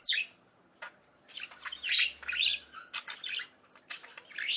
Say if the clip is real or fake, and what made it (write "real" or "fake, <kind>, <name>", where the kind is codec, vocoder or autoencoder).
real